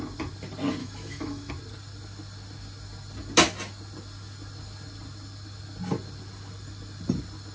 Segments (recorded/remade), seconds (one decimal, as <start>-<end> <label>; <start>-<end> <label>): 0.0-0.8 recorded; 0.8-1.5 remade; 1.5-7.5 recorded